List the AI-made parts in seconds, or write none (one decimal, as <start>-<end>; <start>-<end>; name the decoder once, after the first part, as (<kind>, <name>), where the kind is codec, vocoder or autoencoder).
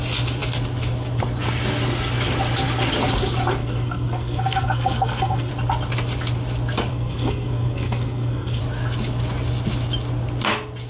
3.6-5.5 (codec, SNAC); 6.9-8.6